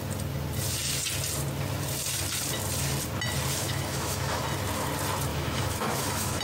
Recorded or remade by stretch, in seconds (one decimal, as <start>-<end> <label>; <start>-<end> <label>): 0.0-3.5 recorded; 3.5-4.4 remade; 4.4-5.3 recorded; 5.3-6.4 remade